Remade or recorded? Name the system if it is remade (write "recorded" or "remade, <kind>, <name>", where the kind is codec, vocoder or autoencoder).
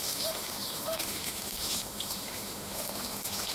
remade, autoencoder, DAC-VAE